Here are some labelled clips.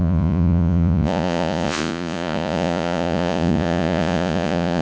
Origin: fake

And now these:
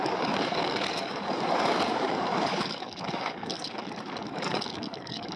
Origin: fake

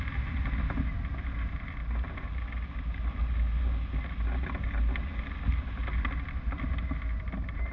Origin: real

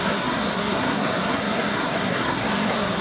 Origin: fake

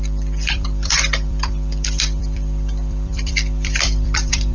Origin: fake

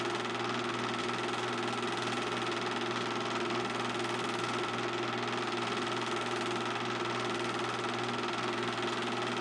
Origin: real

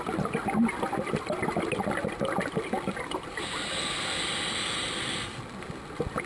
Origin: real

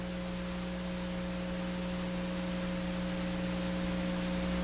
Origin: real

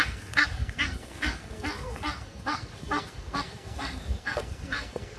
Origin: fake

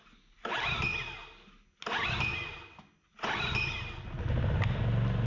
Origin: real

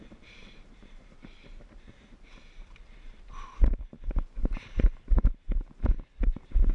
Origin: fake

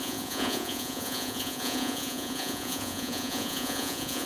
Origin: fake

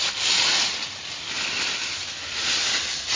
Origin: real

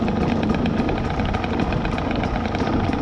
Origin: real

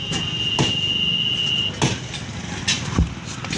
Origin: real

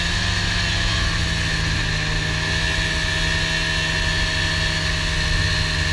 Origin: real